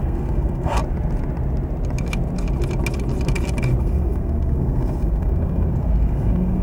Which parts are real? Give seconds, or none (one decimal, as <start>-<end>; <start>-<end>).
0.8-3.8